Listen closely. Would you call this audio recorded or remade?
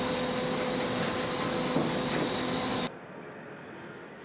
recorded